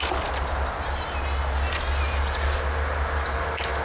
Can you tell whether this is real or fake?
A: real